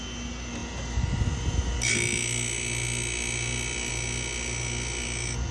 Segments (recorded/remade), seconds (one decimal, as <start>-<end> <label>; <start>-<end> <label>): 0.0-5.5 recorded